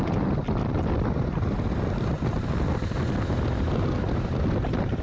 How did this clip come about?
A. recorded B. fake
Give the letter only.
A